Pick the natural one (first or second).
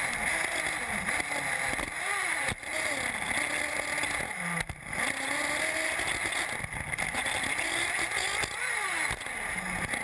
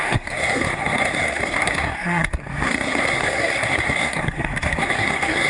first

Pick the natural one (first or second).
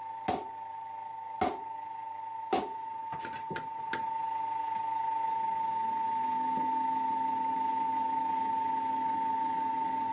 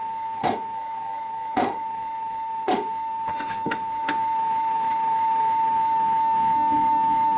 first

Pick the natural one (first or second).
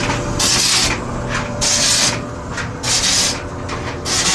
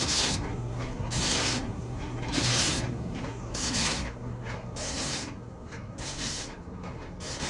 first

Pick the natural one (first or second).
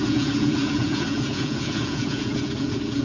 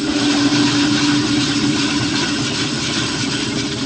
second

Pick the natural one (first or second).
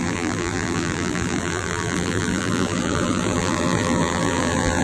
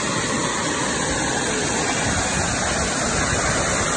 second